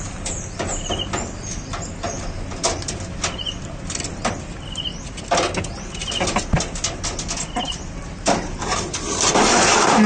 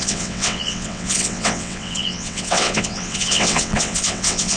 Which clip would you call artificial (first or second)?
second